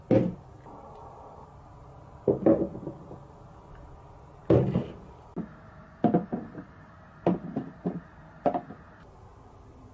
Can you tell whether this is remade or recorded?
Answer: recorded